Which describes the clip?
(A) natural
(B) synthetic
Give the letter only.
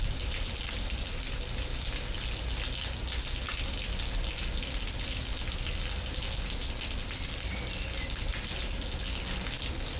A